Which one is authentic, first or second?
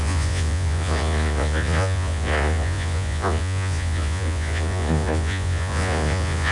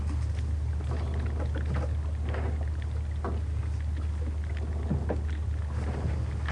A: second